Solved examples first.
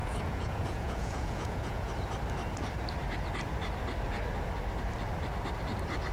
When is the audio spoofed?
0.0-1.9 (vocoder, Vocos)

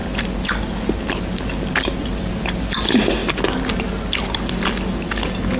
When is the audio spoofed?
none

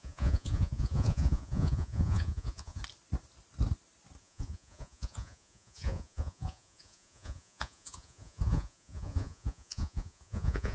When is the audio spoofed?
0.0-2.8 (vocoder, Vocos); 4.2-10.7

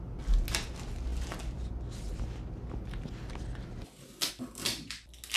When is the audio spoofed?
none

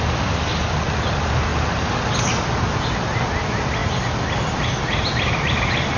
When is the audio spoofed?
none